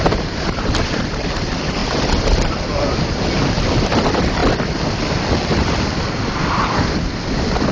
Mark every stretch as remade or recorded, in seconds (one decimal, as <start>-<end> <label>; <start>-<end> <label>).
0.0-7.7 recorded

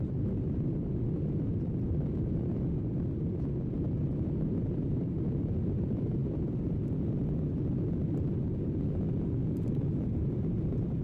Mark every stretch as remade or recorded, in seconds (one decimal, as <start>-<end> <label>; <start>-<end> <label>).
0.0-11.0 recorded

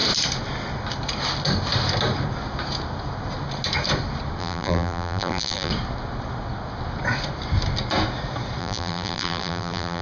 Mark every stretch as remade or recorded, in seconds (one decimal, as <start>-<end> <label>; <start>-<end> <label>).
0.0-4.4 recorded; 4.4-5.7 remade; 5.7-8.6 recorded; 8.6-10.0 remade

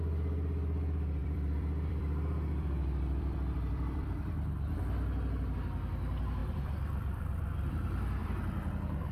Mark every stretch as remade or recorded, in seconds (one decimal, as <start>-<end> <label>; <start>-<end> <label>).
0.0-1.2 recorded; 1.2-4.3 remade; 4.3-6.4 recorded; 6.4-7.7 remade; 7.7-8.2 recorded; 8.2-8.7 remade; 8.7-9.1 recorded